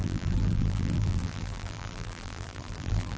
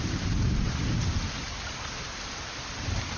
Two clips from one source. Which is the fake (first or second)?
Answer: first